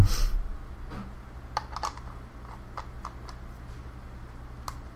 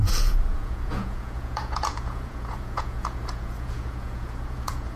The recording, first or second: first